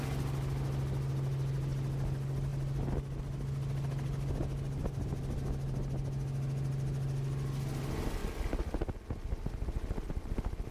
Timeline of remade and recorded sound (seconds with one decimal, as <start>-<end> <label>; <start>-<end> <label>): 0.0-10.7 recorded

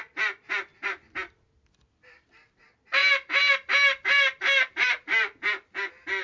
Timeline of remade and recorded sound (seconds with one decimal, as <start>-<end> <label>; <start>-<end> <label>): 0.0-6.2 recorded

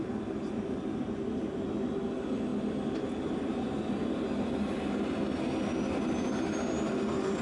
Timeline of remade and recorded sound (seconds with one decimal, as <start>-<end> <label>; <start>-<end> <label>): 0.0-7.4 recorded

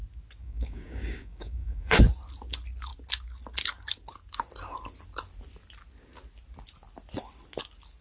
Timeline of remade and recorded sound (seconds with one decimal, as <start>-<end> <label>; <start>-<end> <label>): 0.0-0.4 recorded; 0.4-2.0 remade; 2.0-8.0 recorded